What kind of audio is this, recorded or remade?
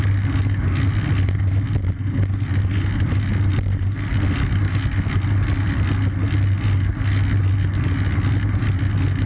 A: recorded